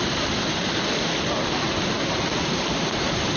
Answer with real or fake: real